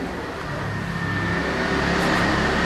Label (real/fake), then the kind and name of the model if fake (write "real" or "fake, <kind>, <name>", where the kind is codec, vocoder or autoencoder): real